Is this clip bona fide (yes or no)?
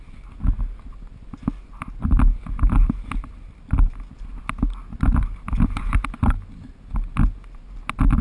yes